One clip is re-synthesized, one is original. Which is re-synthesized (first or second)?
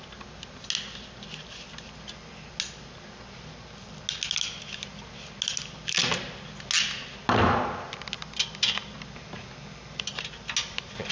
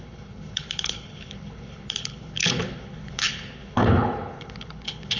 second